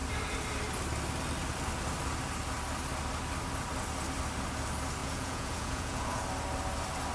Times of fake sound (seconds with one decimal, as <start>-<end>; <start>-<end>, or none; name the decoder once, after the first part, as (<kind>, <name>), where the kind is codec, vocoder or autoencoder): 5.0-6.2 (vocoder, Vocos)